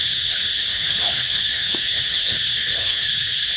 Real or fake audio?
fake